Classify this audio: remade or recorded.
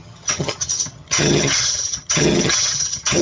remade